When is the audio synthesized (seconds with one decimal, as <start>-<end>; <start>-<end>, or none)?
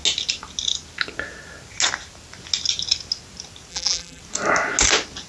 3.7-4.2